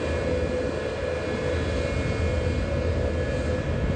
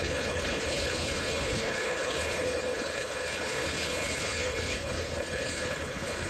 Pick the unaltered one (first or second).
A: first